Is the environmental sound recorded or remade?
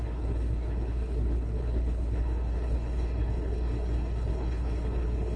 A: remade